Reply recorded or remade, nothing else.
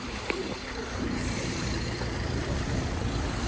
remade